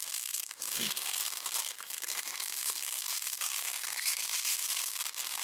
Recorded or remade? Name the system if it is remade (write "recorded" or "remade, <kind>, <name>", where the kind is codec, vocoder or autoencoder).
remade, codec, DAC